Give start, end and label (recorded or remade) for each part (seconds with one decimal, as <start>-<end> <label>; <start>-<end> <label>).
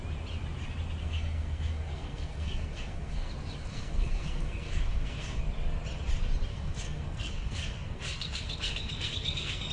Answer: 0.0-1.0 recorded; 1.0-3.3 remade; 3.3-3.7 recorded; 3.7-5.4 remade; 5.4-6.5 recorded; 6.5-9.7 remade